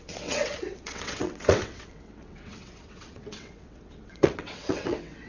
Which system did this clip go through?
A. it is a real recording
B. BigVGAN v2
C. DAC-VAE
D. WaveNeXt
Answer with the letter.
D